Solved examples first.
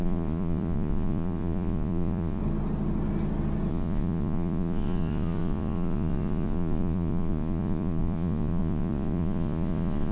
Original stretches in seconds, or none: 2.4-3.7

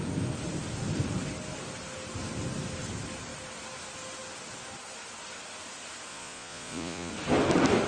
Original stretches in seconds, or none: 0.0-6.1; 7.1-7.9

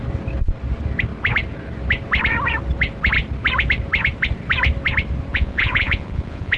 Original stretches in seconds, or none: 0.0-5.3

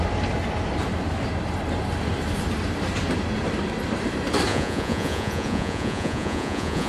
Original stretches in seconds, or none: 0.0-4.5

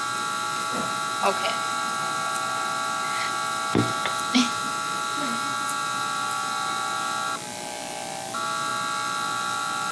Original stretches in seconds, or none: 0.0-9.9

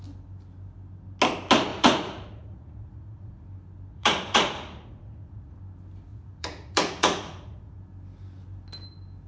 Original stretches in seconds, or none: 0.0-1.7; 3.4-3.9; 5.6-6.1; 7.8-9.3

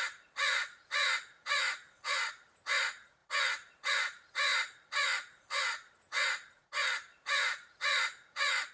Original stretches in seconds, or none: none